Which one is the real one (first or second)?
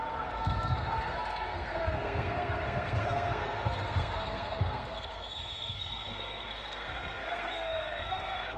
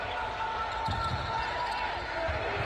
second